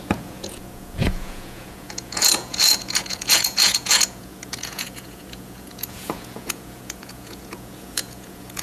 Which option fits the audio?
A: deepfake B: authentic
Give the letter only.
A